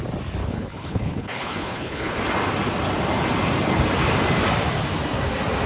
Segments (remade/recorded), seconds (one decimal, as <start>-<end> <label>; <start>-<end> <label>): 0.0-0.4 recorded; 0.4-2.2 remade; 2.2-5.7 recorded